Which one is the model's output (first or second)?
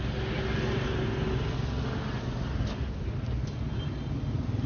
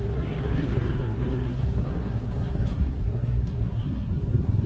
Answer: second